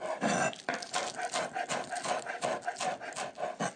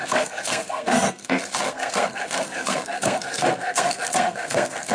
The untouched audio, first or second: first